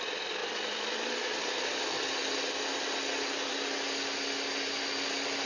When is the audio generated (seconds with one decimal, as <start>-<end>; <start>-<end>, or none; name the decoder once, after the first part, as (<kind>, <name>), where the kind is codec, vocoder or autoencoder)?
none